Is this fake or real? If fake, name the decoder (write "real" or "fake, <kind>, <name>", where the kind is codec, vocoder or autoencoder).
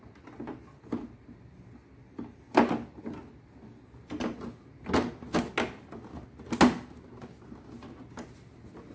real